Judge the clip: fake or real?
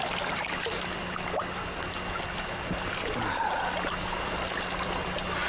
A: real